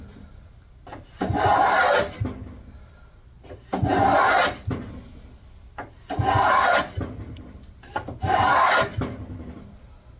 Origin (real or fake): real